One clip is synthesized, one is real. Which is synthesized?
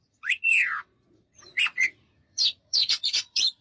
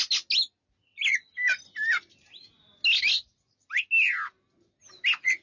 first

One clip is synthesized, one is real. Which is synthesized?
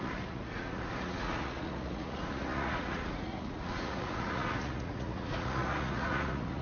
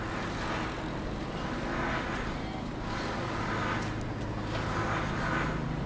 first